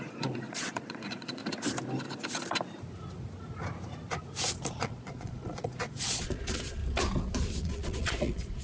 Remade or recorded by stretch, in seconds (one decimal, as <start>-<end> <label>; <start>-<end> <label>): 0.0-1.4 remade; 1.4-4.7 recorded; 4.7-6.8 remade; 6.8-7.6 recorded; 7.6-8.6 remade